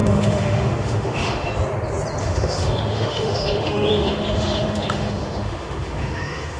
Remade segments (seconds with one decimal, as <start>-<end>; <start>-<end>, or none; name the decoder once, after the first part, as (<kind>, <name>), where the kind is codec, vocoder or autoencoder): 0.0-1.5 (autoencoder, DAC-VAE); 2.2-6.6